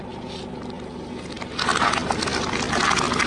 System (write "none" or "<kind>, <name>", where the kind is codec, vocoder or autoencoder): none